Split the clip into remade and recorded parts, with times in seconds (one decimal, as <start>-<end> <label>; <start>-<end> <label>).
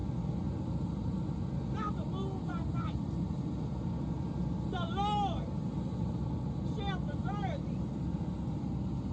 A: 0.0-9.1 recorded